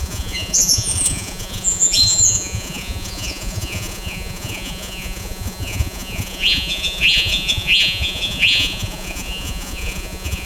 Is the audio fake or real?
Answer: fake